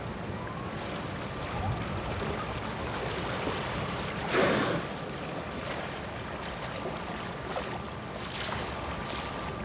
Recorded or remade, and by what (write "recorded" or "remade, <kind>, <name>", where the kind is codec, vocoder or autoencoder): recorded